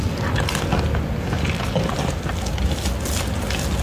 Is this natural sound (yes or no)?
yes